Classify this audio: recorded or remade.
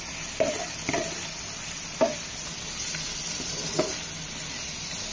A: recorded